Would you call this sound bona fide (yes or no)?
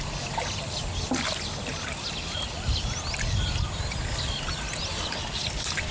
yes